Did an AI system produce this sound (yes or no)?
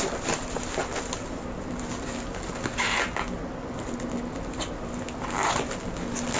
no